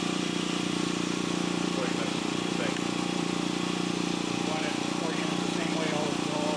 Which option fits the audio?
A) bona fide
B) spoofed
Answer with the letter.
B